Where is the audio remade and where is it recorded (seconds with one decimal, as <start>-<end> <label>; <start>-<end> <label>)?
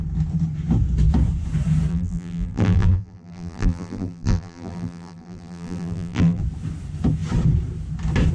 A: 0.0-1.9 recorded; 1.9-6.4 remade; 6.4-8.3 recorded